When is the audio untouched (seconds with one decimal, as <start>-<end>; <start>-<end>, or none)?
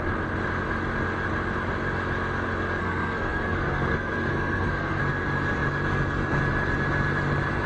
0.0-2.8; 5.0-7.7